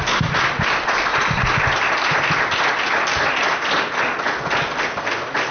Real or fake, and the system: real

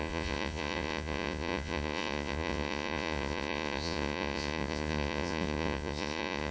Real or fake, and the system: fake, vocoder, Vocos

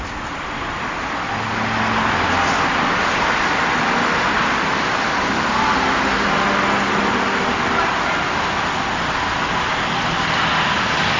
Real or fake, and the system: real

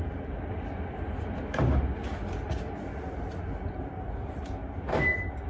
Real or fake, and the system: real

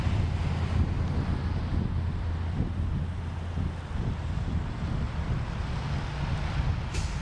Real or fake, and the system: real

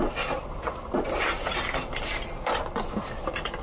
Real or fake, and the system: real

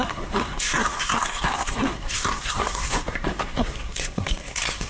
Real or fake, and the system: fake, codec, SNAC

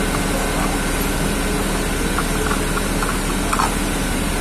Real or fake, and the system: real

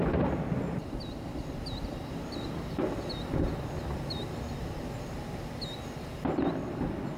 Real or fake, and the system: real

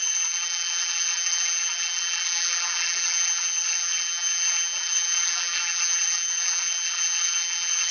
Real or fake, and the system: fake, vocoder, BigVGAN v2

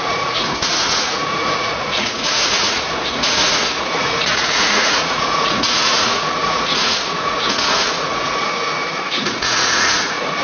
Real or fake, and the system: fake, vocoder, Vocos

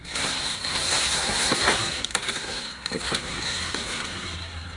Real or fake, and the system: fake, codec, SNAC